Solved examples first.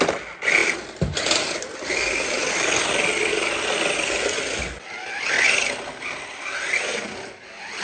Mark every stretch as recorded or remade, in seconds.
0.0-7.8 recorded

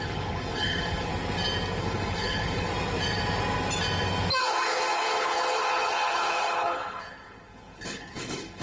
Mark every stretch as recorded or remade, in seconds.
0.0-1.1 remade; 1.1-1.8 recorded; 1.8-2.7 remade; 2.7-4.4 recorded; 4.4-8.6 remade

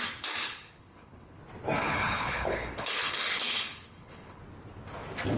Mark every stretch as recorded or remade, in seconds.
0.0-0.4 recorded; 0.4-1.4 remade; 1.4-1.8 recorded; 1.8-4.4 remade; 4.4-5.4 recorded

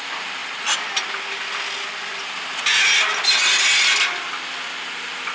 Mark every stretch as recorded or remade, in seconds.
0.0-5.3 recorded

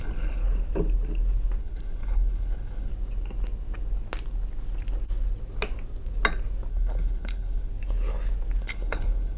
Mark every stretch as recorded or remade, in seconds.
0.0-0.4 remade; 0.4-1.6 recorded; 1.6-2.9 remade; 2.9-6.7 recorded; 6.7-7.7 remade; 7.7-8.6 recorded; 8.6-9.4 remade